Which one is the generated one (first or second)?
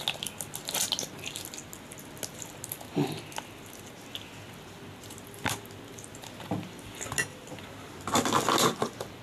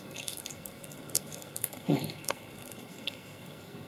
second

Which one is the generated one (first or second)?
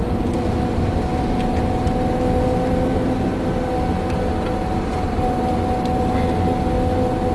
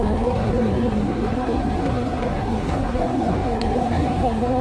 second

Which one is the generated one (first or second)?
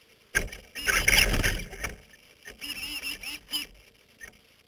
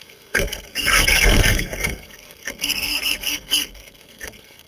second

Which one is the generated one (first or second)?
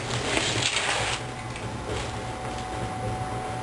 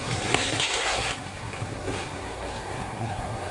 second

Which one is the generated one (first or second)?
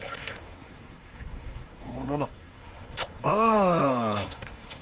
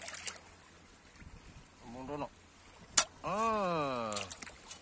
first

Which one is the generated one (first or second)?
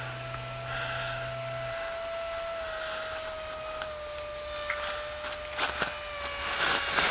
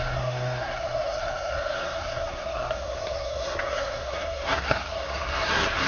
second